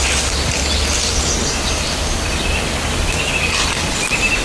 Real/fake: real